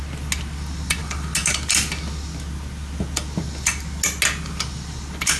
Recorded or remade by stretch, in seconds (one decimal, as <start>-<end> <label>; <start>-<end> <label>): 0.0-5.4 recorded